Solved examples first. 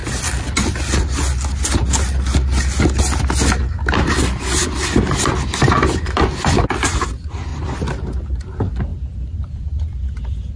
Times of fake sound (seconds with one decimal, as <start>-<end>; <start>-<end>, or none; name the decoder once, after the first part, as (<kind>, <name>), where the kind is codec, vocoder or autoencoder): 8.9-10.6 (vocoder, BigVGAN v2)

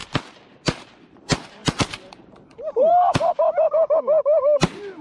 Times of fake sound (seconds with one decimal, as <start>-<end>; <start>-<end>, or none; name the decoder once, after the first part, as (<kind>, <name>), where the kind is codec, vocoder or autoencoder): 1.0-5.0 (vocoder, BigVGAN v2)

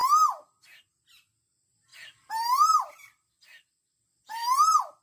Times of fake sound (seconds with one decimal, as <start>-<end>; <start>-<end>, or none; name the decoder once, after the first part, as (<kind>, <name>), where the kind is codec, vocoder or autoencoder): 1.9-5.0 (vocoder, BigVGAN v2)